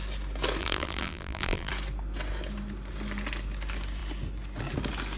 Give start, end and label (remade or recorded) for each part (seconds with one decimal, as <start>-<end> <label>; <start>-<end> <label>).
0.0-0.6 recorded; 0.6-1.7 remade; 1.7-5.2 recorded